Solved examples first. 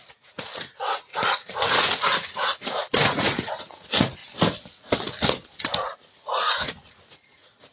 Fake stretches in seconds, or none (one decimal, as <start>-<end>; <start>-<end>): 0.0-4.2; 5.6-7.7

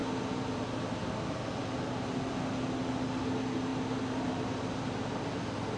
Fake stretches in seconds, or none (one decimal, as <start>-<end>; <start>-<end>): none

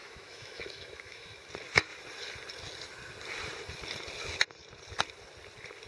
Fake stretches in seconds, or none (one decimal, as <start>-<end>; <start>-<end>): 0.0-1.5

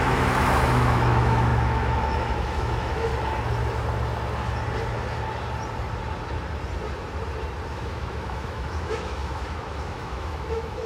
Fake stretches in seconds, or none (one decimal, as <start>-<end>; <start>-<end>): 0.0-3.1; 7.7-10.9

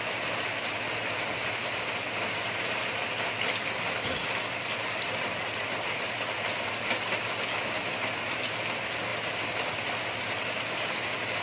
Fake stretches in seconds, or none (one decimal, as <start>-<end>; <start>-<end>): none